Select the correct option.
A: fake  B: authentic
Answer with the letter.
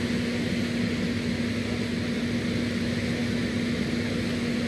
B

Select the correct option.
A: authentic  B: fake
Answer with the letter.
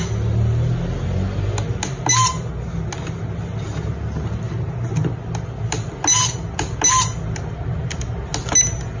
A